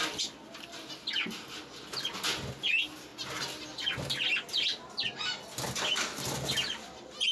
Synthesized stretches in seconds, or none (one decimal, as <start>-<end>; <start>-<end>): none